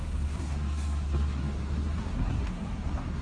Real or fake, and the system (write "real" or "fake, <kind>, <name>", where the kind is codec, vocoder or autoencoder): fake, codec, SNAC